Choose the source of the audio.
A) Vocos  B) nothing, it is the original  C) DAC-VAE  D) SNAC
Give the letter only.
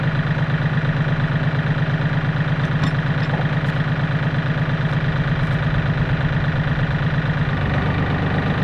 B